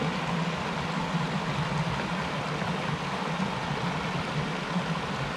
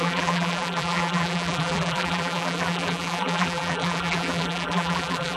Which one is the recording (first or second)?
first